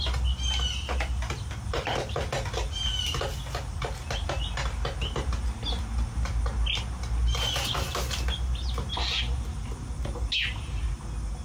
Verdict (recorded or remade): recorded